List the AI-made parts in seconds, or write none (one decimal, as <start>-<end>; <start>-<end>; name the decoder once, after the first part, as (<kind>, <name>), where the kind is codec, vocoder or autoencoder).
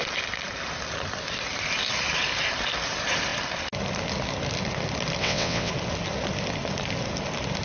5.2-5.7 (vocoder, WaveNeXt)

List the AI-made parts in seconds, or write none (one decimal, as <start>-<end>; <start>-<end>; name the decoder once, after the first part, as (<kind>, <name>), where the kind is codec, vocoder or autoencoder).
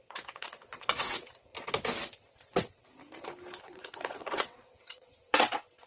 0.0-1.5 (vocoder, WaveNeXt); 2.3-3.0; 3.6-5.9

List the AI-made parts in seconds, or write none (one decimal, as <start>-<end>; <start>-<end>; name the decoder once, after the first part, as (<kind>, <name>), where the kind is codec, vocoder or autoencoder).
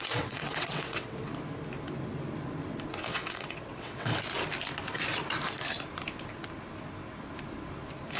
0.0-1.3 (vocoder, WaveNeXt); 3.1-4.1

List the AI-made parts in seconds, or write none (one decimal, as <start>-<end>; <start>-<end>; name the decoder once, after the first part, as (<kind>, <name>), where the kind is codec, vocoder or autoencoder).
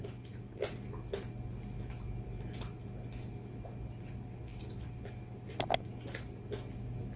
none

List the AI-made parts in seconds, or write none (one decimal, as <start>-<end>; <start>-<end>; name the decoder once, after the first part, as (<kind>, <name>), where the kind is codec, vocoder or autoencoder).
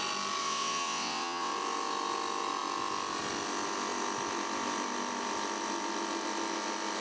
0.4-1.5 (vocoder, WaveNeXt)